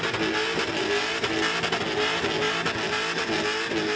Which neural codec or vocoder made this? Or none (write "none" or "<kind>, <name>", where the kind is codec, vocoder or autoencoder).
none